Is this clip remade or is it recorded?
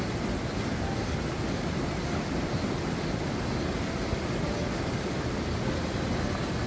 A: recorded